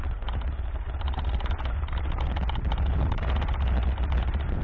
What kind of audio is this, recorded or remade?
remade